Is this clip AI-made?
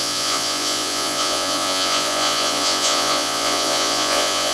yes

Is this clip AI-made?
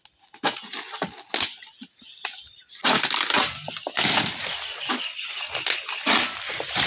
no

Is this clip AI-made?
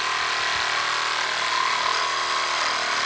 no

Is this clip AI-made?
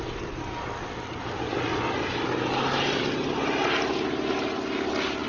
no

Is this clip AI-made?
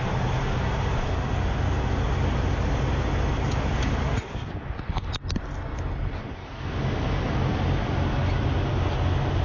no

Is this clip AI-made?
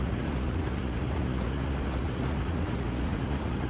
yes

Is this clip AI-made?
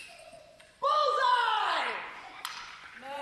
yes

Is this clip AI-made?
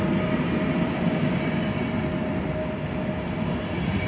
no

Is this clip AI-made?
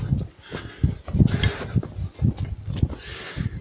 no